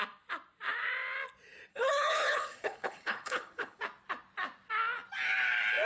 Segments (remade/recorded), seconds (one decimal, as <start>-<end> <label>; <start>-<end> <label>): 0.0-1.7 recorded; 1.7-3.8 remade; 3.8-5.9 recorded